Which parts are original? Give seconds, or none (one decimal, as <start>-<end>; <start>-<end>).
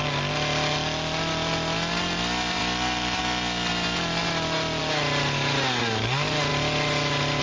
0.0-2.6; 3.2-7.4